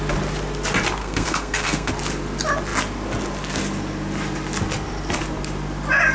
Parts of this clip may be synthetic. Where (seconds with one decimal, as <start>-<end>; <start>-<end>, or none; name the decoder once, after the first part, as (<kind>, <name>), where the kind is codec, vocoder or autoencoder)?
1.0-1.9 (codec, SNAC)